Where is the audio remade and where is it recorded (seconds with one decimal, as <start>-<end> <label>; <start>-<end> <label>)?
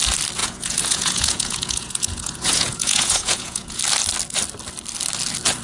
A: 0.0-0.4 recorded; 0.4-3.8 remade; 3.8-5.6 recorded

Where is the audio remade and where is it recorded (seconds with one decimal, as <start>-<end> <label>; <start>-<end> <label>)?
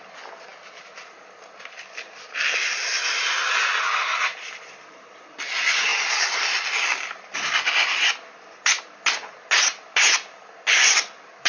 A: 0.0-11.5 recorded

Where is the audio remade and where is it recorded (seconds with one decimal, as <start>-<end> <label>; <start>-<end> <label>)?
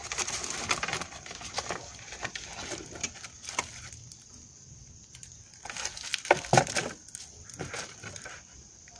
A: 0.0-9.0 recorded